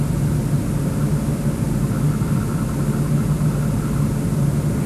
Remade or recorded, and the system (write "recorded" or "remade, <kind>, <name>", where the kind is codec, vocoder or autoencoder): recorded